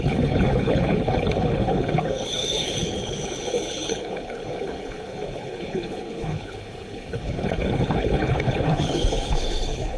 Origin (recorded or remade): remade